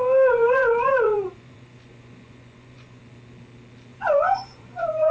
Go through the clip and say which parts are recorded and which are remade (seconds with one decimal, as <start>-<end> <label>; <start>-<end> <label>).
0.0-0.4 recorded; 0.4-3.0 remade; 3.0-3.9 recorded; 3.9-5.1 remade